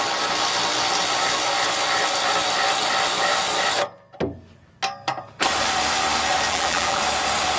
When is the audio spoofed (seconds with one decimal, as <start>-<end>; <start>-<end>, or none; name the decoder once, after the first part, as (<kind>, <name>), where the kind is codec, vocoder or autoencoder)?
6.5-7.0 (vocoder, BigVGAN v2)